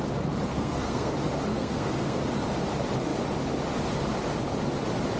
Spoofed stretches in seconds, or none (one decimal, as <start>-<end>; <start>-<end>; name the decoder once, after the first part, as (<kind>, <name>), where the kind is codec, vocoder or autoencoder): 0.5-1.1 (codec, SNAC); 1.5-2.2